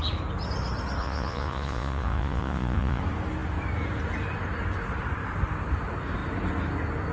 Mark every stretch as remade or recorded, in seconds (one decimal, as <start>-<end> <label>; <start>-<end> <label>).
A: 0.0-1.0 recorded; 1.0-3.0 remade; 3.0-7.1 recorded